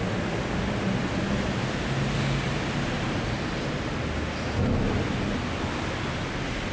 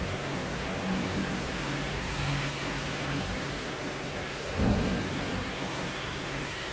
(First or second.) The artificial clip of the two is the second